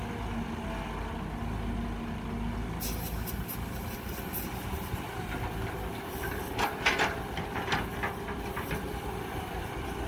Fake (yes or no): no